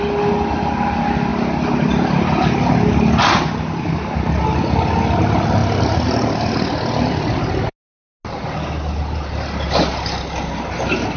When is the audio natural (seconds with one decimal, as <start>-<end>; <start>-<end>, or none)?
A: 0.0-5.6; 7.4-11.2